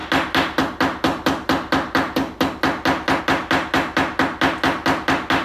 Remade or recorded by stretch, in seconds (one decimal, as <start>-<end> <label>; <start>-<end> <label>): 0.0-5.4 recorded